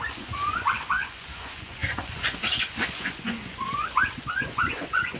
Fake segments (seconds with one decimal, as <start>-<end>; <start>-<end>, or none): 0.0-5.2